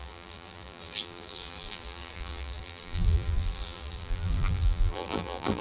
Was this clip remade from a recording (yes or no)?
yes